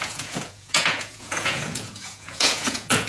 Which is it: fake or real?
fake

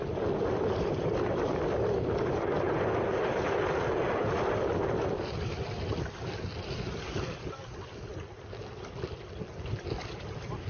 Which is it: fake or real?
real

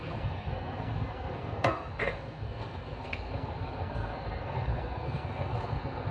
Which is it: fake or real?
fake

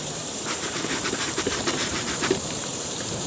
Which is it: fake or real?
fake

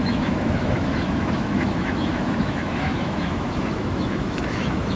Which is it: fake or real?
fake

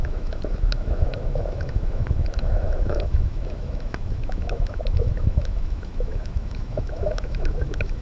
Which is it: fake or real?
fake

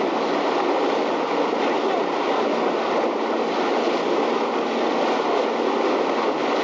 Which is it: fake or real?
real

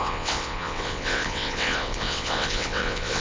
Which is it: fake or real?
fake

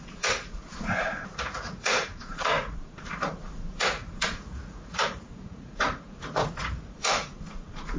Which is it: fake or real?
fake